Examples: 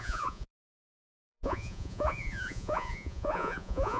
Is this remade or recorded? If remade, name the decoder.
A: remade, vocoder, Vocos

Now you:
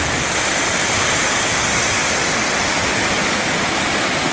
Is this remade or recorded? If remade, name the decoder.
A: recorded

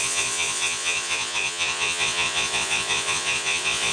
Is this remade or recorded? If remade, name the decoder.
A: remade, vocoder, Vocos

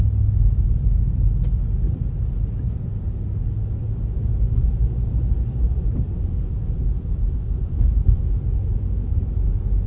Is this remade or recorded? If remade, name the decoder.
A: recorded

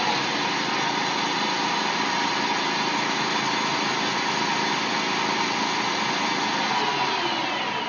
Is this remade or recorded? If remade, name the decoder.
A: recorded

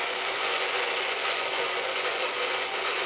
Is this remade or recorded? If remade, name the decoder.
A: remade, vocoder, Vocos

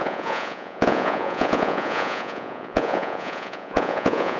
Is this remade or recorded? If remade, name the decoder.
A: remade, vocoder, Vocos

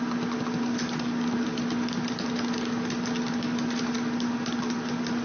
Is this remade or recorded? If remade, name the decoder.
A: recorded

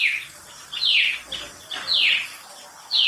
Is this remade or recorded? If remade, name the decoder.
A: recorded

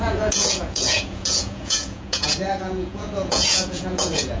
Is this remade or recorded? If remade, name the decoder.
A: remade, vocoder, Vocos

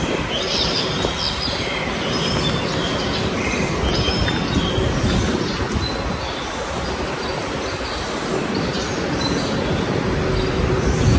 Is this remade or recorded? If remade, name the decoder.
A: recorded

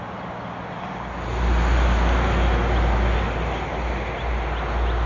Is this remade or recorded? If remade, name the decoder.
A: recorded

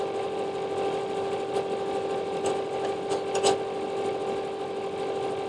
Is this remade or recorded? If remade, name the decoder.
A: recorded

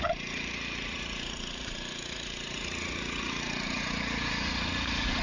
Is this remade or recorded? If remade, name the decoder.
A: remade, vocoder, Vocos